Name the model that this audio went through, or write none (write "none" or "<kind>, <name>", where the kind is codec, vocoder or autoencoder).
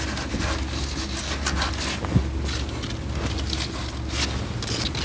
none